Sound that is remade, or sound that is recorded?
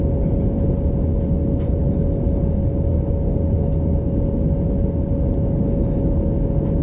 recorded